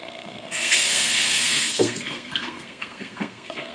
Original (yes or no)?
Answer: no